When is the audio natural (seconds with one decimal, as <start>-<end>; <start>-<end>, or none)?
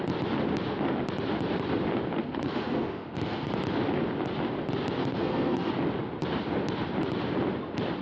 0.0-2.2; 3.6-5.0; 5.7-8.0